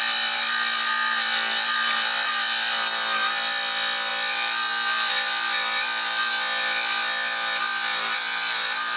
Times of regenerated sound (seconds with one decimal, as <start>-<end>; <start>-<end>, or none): none